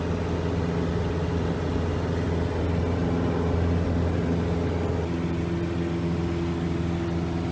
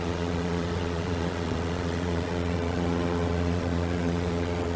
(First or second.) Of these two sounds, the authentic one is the first